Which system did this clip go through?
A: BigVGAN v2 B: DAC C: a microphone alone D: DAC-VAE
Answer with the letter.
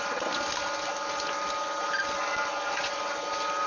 C